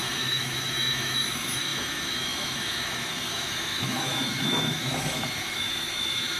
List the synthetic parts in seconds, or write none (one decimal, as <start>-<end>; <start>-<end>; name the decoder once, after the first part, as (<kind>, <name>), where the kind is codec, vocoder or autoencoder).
0.0-6.4 (autoencoder, DAC-VAE)